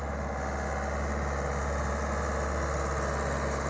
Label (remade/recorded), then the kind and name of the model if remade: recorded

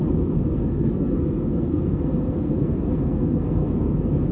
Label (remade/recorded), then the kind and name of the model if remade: remade, codec, SNAC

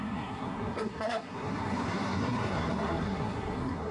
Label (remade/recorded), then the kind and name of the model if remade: remade, codec, SNAC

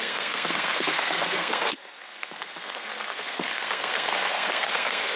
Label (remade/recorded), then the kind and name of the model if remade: remade, codec, SNAC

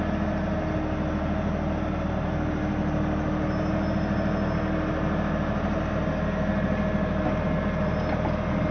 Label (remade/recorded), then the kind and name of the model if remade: recorded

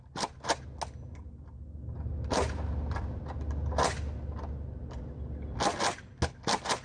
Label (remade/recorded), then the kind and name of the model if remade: recorded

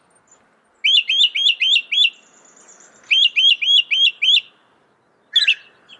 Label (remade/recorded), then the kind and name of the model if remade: recorded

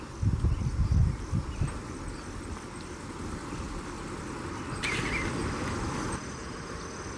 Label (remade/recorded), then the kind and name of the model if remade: recorded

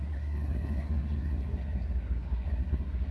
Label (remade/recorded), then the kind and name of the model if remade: remade, codec, SNAC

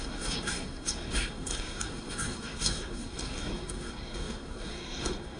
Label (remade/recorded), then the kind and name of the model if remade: remade, codec, SNAC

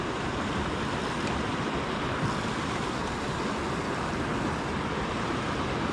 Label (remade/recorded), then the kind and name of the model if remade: recorded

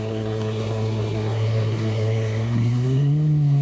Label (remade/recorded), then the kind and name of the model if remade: remade, codec, SNAC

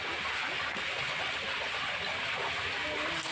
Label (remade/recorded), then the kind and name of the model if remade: recorded